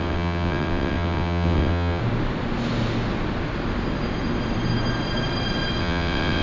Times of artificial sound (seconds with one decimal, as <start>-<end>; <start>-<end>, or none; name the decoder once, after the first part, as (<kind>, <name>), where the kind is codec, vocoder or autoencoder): 0.0-2.0 (vocoder, WaveNeXt); 5.8-6.4